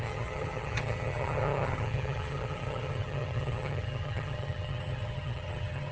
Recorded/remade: remade